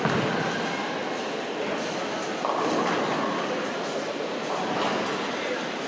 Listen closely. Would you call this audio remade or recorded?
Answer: recorded